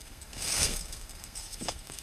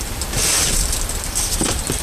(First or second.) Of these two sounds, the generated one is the first